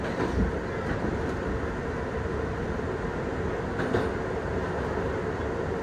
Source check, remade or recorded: recorded